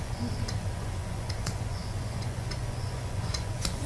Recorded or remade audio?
remade